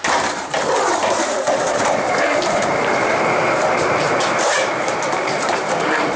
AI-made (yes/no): yes